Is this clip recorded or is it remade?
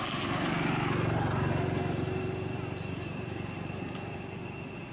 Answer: recorded